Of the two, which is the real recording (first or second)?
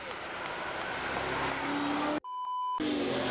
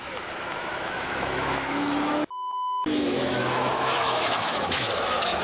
first